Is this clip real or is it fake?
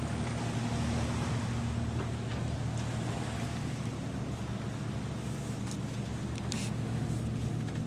real